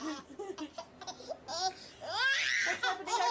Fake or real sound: real